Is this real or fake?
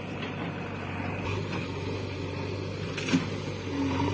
real